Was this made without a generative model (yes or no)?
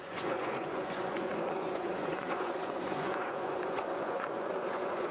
no